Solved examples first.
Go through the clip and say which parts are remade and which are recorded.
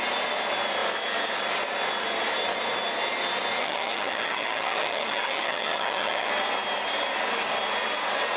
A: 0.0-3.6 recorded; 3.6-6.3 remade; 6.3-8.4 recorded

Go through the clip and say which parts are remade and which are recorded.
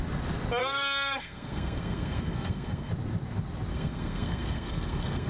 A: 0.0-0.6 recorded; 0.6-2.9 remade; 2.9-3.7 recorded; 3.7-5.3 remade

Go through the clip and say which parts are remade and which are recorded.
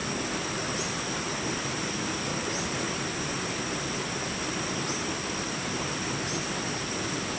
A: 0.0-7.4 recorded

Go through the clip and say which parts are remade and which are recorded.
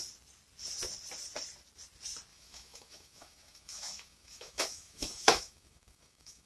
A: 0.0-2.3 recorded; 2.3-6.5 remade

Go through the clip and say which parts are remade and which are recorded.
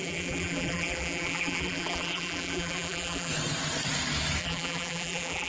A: 0.0-3.3 remade; 3.3-4.4 recorded; 4.4-5.5 remade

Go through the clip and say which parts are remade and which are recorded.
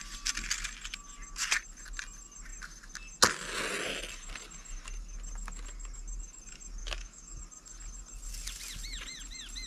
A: 0.0-6.8 recorded; 6.8-7.4 remade; 7.4-9.7 recorded